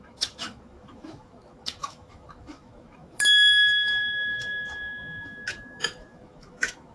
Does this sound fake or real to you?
fake